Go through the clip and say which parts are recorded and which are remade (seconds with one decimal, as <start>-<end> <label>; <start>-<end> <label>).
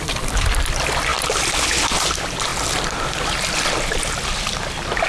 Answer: 0.0-5.1 recorded